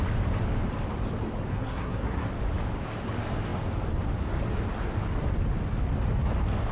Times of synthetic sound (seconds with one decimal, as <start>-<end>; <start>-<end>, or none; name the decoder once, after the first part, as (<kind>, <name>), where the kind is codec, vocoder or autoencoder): 1.5-2.3 (codec, SNAC)